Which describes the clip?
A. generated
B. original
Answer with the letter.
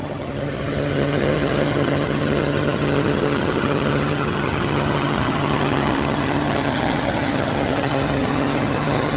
A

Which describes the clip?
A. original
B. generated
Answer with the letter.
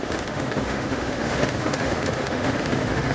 B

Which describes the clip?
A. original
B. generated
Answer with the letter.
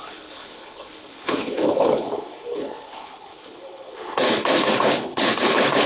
B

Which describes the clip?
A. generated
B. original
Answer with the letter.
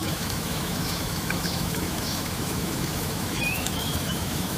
A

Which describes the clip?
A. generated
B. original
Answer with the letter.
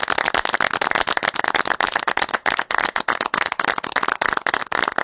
B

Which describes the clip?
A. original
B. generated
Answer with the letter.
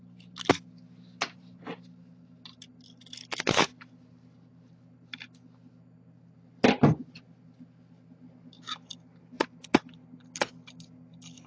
A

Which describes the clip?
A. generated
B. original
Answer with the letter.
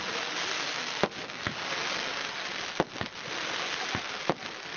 B